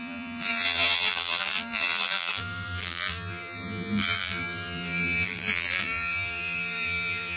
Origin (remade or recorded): remade